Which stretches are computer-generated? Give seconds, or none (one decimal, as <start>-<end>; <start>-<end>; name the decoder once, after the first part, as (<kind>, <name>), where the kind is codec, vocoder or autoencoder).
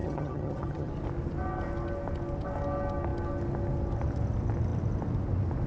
0.0-0.9 (vocoder, HiFi-GAN)